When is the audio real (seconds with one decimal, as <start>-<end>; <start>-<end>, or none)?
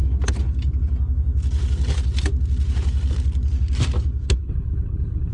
0.0-4.4